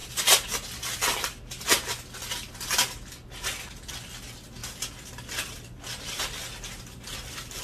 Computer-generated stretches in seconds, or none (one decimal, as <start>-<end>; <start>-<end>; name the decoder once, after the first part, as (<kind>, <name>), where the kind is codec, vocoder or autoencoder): none